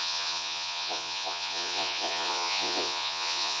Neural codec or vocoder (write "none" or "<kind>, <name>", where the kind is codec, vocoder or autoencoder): vocoder, Vocos